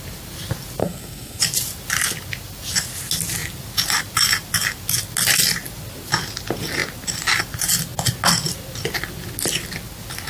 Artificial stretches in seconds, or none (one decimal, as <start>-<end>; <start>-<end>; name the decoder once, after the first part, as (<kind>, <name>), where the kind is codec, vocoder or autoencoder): 0.8-1.4 (codec, SNAC)

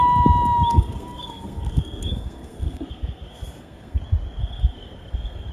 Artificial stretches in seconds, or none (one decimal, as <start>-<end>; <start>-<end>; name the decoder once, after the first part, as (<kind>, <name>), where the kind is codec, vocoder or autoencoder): 0.7-4.0 (codec, SNAC); 4.4-5.5

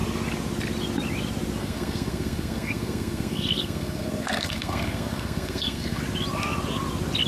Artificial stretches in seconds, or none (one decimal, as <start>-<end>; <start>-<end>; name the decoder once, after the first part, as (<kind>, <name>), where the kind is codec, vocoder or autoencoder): 1.6-6.0 (codec, SNAC)

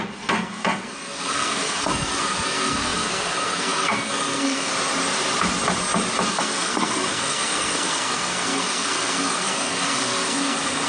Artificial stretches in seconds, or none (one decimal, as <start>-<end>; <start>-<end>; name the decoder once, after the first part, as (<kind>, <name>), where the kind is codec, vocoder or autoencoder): 0.0-4.7 (codec, SNAC); 6.3-10.9

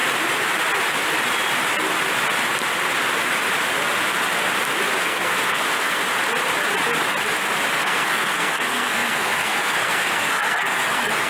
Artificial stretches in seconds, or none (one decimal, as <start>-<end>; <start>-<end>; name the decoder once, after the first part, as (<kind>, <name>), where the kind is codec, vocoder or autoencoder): 5.0-6.0 (codec, SNAC); 7.8-11.3

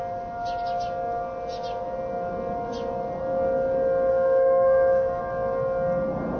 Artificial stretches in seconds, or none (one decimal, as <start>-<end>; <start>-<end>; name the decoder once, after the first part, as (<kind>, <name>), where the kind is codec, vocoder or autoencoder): 4.1-5.2 (codec, SNAC)

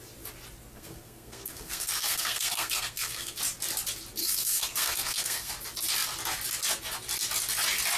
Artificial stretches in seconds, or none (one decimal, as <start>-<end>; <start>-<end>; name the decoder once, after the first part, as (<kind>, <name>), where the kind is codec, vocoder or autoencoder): 0.7-3.4 (codec, SNAC); 4.2-5.5